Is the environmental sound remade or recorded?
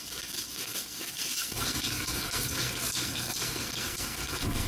remade